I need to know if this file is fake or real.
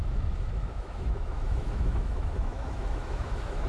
fake